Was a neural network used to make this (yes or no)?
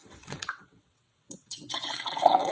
yes